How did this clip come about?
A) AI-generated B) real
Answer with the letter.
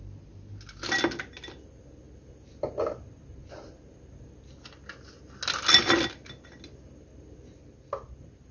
B